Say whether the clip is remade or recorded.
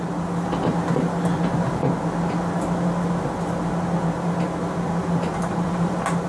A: recorded